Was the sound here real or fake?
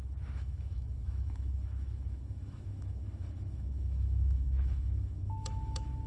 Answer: fake